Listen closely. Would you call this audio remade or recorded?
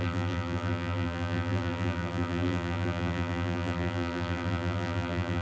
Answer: remade